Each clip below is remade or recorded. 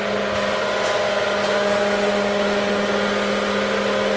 recorded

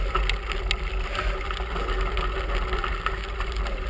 recorded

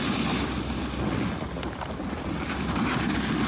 recorded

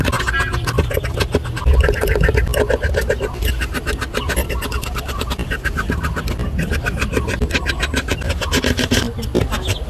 recorded